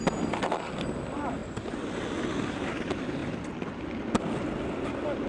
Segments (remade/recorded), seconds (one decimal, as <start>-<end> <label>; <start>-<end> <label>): 0.0-5.3 recorded